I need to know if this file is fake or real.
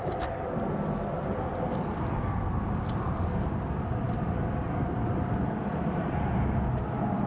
real